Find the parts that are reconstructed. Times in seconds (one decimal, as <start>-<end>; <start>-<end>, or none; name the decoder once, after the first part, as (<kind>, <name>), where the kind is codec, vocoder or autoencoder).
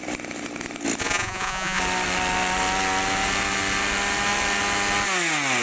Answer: 1.0-1.8 (vocoder, Vocos)